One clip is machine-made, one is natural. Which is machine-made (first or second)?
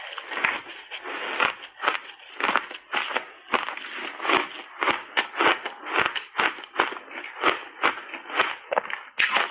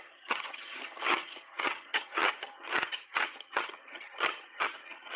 second